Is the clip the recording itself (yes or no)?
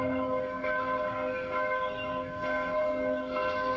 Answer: no